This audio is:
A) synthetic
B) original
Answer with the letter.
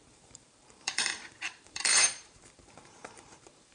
A